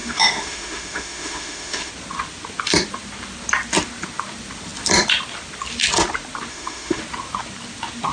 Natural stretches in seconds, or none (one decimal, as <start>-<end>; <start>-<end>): 1.9-6.5; 7.0-8.1